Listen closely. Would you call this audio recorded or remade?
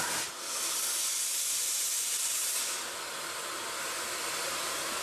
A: recorded